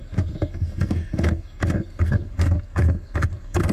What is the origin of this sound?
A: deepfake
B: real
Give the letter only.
A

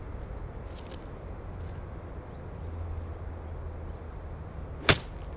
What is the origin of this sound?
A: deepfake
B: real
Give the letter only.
B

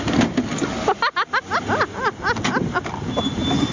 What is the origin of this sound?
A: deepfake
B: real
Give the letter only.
B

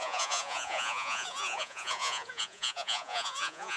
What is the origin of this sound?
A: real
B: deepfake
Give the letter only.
B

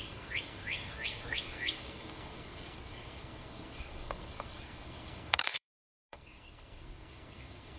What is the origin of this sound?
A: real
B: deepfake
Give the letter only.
B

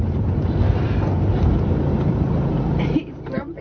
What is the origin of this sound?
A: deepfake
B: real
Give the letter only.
A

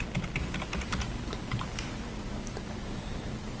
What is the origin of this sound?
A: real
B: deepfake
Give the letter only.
A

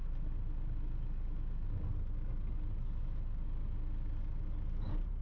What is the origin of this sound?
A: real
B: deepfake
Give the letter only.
A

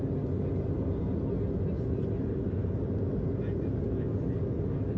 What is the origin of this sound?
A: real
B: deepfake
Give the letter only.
A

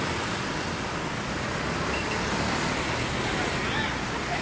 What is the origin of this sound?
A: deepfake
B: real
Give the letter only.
A